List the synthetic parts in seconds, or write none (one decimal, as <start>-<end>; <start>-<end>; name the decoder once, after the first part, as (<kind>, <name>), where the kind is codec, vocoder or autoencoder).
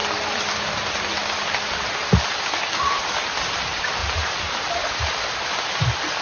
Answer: none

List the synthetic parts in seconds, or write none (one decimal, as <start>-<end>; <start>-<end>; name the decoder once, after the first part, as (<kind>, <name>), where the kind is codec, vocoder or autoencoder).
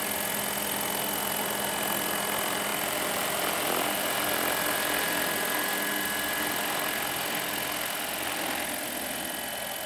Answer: 2.7-4.0 (vocoder, BigVGAN v2)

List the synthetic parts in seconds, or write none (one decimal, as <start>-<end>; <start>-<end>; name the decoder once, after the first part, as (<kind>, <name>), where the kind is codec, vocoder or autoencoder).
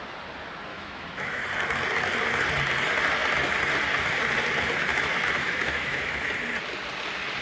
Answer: 0.7-1.4 (autoencoder, DAC-VAE); 4.9-6.3